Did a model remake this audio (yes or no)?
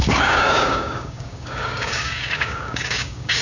yes